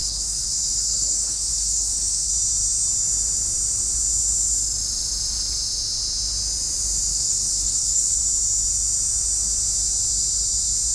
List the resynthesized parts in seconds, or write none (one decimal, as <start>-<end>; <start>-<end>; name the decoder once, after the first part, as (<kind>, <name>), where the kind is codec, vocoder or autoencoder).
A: 0.0-2.3 (codec, HILCodec); 7.1-8.2